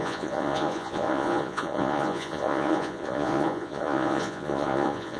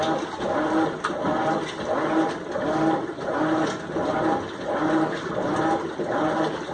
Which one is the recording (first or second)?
second